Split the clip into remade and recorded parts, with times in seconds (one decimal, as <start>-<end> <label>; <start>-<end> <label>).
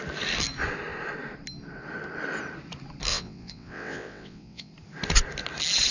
0.0-3.1 recorded; 3.1-4.7 remade; 4.7-5.9 recorded